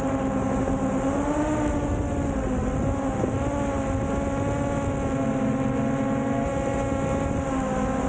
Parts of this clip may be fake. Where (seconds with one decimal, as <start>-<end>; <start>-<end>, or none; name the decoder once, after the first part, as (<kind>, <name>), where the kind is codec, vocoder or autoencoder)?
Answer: none